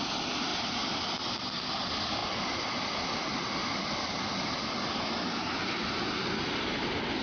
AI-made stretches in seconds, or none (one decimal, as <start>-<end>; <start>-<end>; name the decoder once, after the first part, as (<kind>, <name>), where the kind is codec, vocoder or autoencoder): 0.5-1.2 (vocoder, BigVGAN v2)